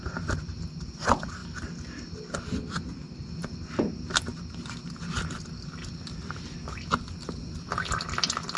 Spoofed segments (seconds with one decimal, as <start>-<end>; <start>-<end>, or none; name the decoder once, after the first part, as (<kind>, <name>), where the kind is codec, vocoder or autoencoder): none